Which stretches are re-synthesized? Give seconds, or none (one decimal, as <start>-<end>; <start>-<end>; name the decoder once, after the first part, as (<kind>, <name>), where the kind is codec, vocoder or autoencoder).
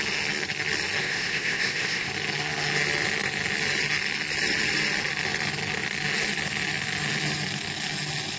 1.0-2.1 (codec, ZipCodec)